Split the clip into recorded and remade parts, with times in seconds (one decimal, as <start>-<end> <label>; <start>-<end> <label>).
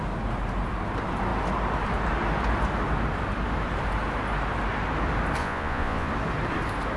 0.0-5.4 recorded; 5.4-6.1 remade; 6.1-7.0 recorded